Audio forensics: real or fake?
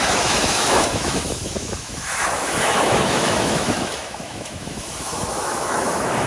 fake